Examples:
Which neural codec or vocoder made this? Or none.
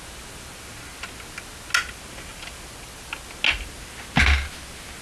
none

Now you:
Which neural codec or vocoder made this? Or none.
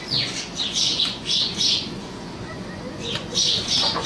vocoder, Vocos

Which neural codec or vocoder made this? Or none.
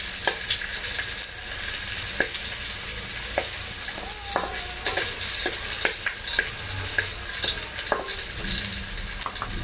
none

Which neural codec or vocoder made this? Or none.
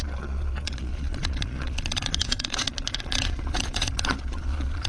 vocoder, Vocos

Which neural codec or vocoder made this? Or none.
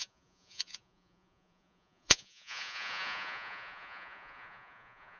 vocoder, Vocos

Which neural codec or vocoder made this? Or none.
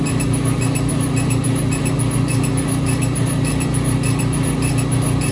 none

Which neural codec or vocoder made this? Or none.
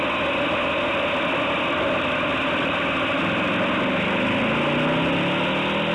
none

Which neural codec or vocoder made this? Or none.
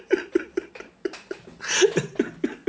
none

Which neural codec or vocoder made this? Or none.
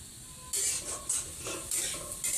none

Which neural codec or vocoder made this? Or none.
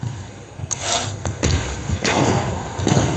codec, SNAC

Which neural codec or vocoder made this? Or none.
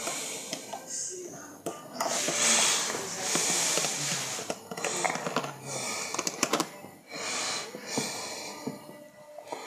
none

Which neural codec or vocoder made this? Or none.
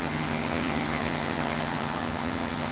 vocoder, HiFi-GAN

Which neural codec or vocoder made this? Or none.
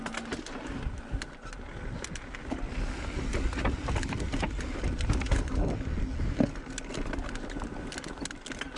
none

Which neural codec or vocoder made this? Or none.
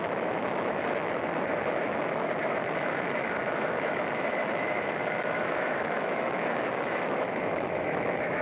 autoencoder, DAC-VAE